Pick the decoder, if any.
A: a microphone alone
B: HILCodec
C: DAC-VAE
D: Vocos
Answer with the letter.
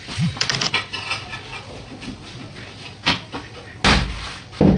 A